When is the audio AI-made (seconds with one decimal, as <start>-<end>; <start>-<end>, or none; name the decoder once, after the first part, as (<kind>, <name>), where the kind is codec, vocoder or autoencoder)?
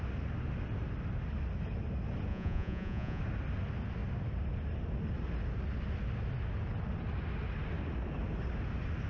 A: 2.3-3.2 (vocoder, Vocos)